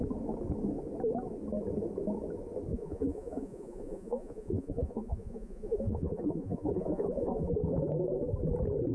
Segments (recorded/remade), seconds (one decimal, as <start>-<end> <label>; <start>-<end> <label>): 0.0-2.7 recorded; 2.7-7.6 remade; 7.6-8.9 recorded

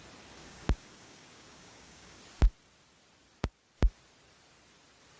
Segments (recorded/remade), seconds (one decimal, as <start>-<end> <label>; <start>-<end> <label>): 0.0-0.4 recorded; 0.4-2.2 remade; 2.2-5.2 recorded

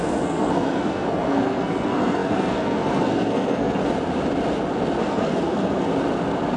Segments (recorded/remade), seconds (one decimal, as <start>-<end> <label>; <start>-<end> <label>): 0.0-3.8 remade; 3.8-5.0 recorded; 5.0-5.9 remade; 5.9-6.6 recorded

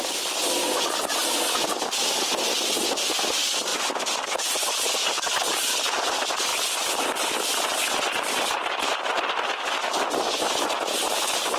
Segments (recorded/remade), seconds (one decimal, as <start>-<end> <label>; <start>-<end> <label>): 0.0-3.7 recorded; 3.7-4.8 remade; 4.8-6.5 recorded; 6.5-7.5 remade; 7.5-11.6 recorded